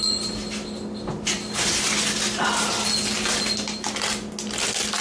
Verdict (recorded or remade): recorded